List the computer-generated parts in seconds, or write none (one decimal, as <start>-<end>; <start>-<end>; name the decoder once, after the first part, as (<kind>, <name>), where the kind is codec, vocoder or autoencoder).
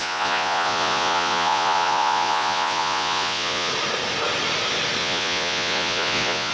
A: 0.0-3.7 (vocoder, Vocos); 5.0-6.5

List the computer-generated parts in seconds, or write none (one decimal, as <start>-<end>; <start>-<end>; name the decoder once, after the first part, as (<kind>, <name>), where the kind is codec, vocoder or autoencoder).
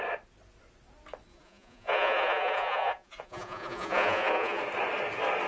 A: 1.3-4.6 (vocoder, Vocos)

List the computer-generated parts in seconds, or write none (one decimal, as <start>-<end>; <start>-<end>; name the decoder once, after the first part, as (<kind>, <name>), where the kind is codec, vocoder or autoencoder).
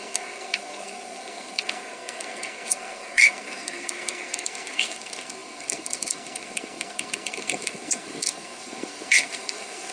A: 0.0-9.9 (codec, SNAC)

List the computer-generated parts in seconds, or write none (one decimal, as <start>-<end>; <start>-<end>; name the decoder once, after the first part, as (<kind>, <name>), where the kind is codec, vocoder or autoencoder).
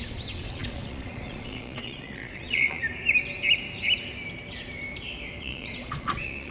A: 0.0-2.8 (vocoder, Vocos); 5.4-6.5